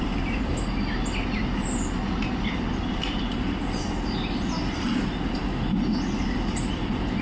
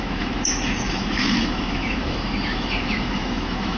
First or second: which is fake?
second